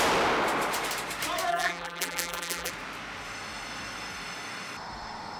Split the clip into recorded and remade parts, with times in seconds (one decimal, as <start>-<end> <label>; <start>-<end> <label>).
0.0-1.5 recorded; 1.5-2.7 remade; 2.7-5.4 recorded